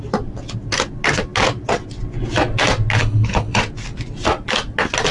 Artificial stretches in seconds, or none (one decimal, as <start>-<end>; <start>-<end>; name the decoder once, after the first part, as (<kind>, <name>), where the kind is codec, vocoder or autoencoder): 3.0-3.6 (codec, HILCodec)